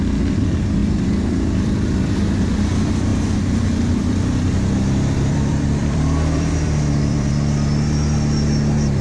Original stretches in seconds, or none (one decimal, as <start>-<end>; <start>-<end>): 0.0-0.8; 2.5-3.1; 7.3-9.0